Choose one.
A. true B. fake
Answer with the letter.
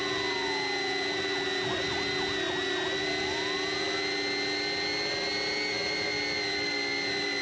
A